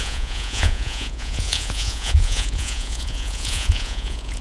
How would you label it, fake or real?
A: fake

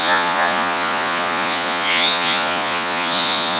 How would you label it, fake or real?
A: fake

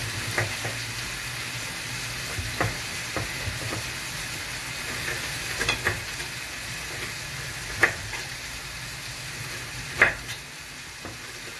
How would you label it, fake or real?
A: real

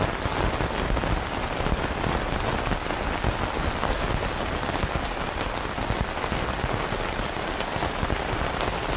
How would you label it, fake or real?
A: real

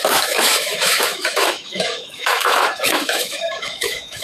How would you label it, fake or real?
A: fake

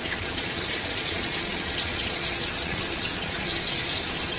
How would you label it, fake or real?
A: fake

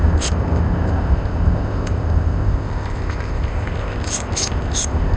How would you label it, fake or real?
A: fake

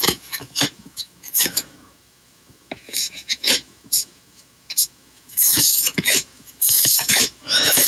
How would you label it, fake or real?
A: fake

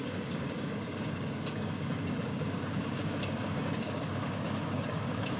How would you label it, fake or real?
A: fake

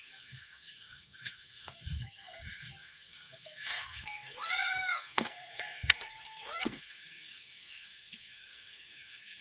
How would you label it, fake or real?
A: fake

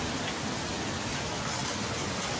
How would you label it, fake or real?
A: real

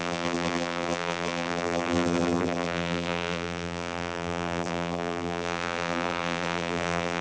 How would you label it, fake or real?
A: fake